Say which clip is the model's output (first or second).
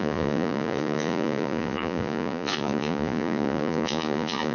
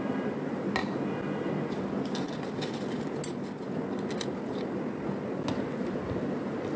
first